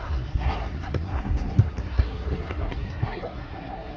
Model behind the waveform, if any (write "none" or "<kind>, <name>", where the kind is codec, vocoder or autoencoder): codec, SNAC